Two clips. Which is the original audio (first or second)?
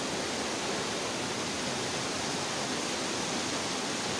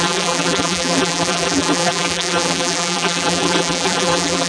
first